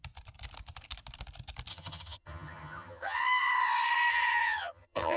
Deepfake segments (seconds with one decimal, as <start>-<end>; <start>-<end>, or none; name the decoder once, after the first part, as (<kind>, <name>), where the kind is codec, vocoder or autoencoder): 1.7-3.2 (vocoder, HiFi-GAN); 4.1-5.2